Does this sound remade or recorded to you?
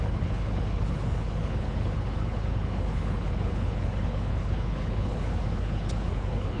remade